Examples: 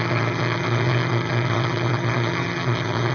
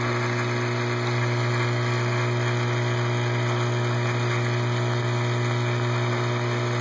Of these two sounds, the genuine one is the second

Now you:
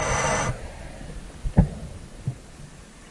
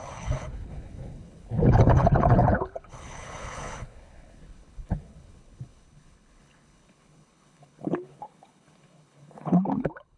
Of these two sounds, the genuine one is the first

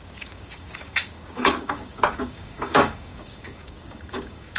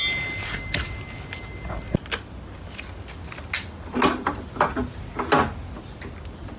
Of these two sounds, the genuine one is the second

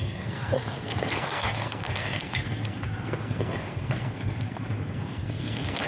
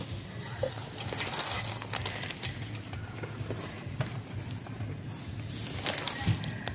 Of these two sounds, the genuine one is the second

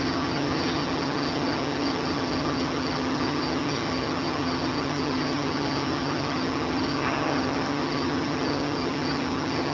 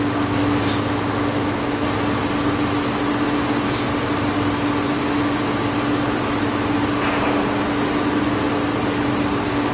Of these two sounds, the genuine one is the second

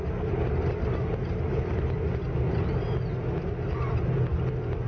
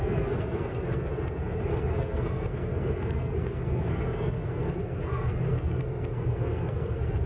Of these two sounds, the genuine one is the first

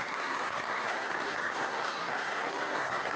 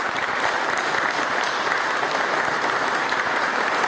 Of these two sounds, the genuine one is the second